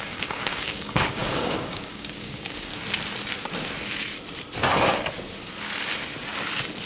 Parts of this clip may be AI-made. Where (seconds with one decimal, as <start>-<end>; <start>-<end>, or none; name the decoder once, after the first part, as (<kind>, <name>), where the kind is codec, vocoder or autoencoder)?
0.0-2.7 (codec, DAC)